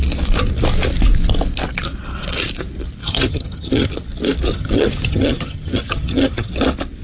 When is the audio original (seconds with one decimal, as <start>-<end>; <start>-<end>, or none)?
0.0-3.0; 3.9-4.5; 6.5-7.0